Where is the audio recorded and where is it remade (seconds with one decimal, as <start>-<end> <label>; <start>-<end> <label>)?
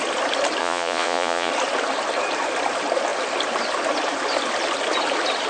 0.0-0.6 recorded; 0.6-1.5 remade; 1.5-5.5 recorded